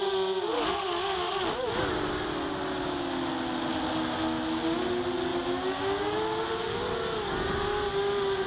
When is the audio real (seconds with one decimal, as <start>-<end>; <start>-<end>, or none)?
0.0-8.5